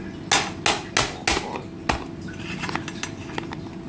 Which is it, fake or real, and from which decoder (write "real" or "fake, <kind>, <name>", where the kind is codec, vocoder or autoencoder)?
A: real